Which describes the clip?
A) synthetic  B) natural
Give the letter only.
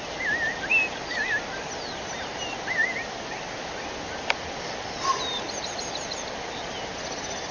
B